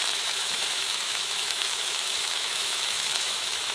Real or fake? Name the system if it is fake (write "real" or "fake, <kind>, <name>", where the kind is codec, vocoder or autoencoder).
fake, autoencoder, DAC-VAE